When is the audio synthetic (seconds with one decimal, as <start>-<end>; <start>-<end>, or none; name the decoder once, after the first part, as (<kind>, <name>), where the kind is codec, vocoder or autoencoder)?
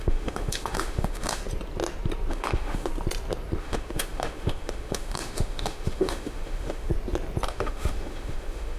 0.0-1.4 (autoencoder, DAC-VAE); 2.3-2.9; 3.6-6.9; 7.5-8.8